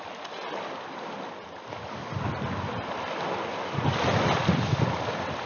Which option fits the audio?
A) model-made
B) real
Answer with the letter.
B